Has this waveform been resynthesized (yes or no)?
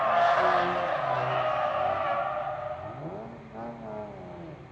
no